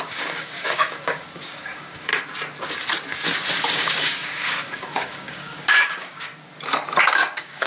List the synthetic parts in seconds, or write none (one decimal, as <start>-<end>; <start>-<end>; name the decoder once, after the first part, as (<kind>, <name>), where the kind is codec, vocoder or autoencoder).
0.0-2.1 (codec, DAC); 3.5-6.3; 7.1-7.7